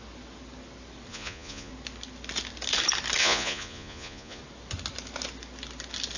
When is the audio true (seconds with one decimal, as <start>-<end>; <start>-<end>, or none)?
0.0-1.1; 1.7-3.2; 4.4-6.2